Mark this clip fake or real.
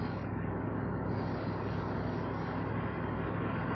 fake